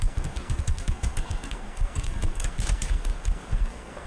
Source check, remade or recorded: remade